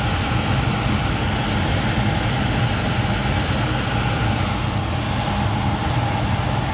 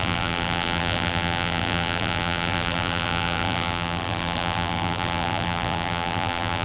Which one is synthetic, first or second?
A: second